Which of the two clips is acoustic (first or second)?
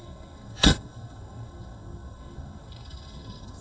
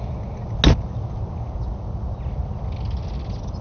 second